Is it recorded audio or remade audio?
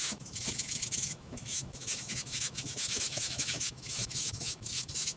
remade